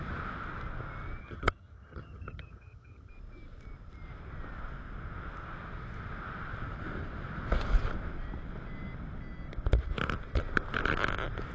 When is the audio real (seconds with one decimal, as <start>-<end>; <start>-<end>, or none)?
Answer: 0.0-1.2; 3.1-11.5